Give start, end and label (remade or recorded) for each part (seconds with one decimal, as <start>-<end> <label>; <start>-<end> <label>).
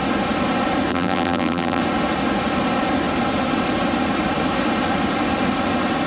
0.0-0.9 recorded; 0.9-1.8 remade; 1.8-6.1 recorded